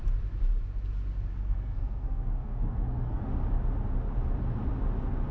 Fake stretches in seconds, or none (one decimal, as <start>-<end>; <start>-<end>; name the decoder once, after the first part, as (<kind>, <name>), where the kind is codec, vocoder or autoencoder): 1.3-3.2 (codec, SNAC)